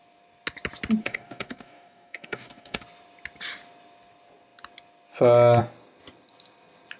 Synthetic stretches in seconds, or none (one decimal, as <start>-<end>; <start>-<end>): 1.0-2.8